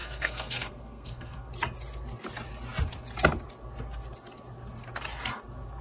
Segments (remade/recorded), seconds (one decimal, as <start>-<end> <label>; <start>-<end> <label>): 0.0-1.5 remade; 1.5-5.8 recorded